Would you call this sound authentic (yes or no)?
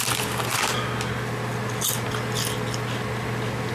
yes